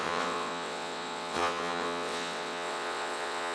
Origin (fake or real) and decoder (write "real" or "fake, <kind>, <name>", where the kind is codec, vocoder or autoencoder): fake, vocoder, WaveNeXt